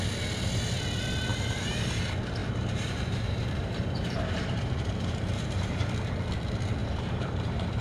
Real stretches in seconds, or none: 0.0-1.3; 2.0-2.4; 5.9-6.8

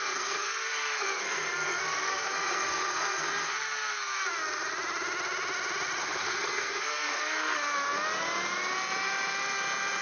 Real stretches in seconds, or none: 4.3-6.0; 7.6-10.0

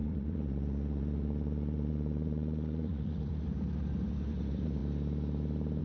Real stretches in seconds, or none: 3.3-5.8

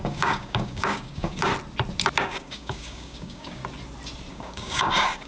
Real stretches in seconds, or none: 1.5-2.2; 3.6-4.3

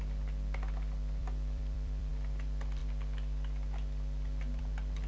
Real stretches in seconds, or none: 0.0-1.2; 2.1-5.1

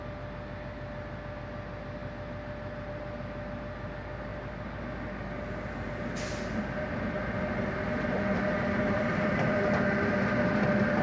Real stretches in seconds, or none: 0.0-8.8; 10.3-11.0

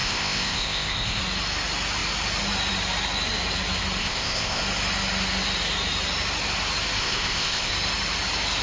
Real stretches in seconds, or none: 1.2-4.0; 4.6-7.0; 7.7-8.6

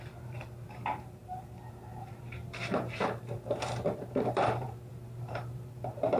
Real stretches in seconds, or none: none